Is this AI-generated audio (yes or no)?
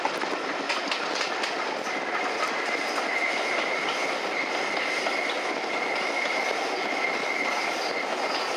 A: no